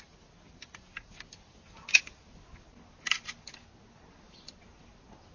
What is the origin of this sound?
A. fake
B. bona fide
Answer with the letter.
B